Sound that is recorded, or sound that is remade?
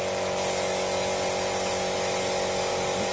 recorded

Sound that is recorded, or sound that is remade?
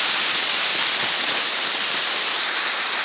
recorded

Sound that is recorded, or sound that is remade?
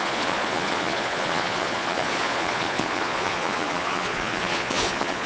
remade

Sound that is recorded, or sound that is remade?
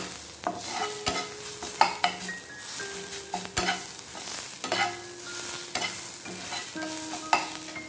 recorded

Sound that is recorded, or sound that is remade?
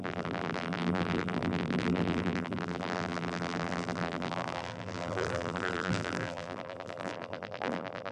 remade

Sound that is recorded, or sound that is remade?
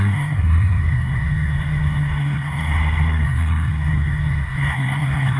remade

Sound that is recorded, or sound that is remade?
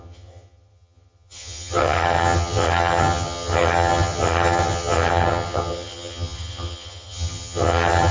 remade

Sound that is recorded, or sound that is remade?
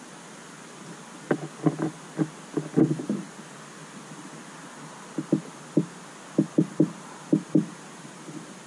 recorded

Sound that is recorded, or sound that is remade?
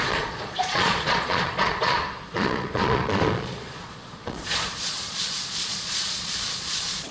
remade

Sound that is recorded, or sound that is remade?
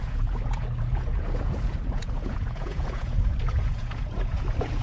remade